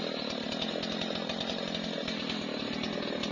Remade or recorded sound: recorded